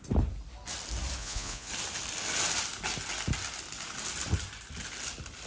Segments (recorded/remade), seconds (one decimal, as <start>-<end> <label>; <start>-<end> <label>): 0.0-1.2 recorded; 1.2-1.7 remade; 1.7-5.5 recorded